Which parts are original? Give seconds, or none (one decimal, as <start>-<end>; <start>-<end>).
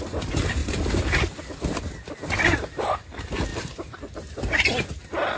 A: 0.0-3.5; 4.7-5.4